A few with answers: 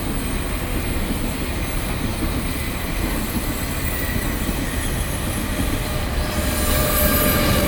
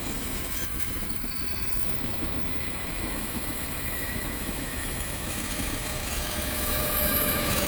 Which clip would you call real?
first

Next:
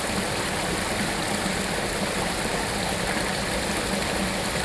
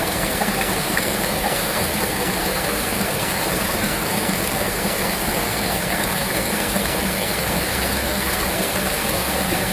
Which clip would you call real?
first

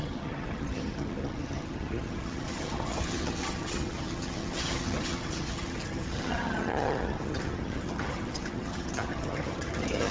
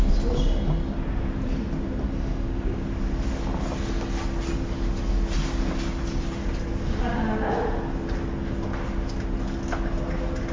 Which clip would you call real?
second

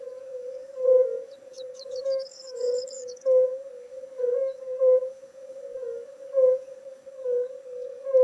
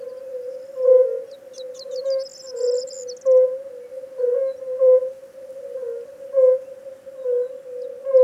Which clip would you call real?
second